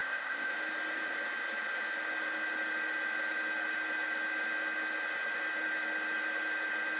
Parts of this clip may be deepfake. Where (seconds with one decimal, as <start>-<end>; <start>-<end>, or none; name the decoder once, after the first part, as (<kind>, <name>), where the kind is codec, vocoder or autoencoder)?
0.0-0.5 (codec, ZipCodec)

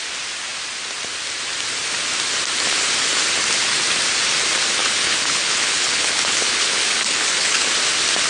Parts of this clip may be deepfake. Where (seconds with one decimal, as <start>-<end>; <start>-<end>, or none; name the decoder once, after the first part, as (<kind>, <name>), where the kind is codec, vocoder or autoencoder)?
4.8-7.7 (codec, HILCodec)

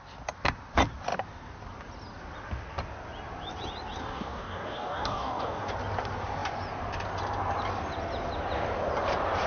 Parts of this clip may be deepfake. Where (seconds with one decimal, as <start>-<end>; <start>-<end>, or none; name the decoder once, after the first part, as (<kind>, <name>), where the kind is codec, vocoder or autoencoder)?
4.0-5.7 (codec, DAC)